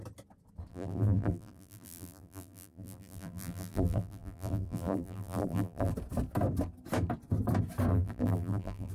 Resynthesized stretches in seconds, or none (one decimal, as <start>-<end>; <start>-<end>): 0.7-5.9; 7.9-8.9